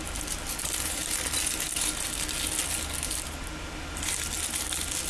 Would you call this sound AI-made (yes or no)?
no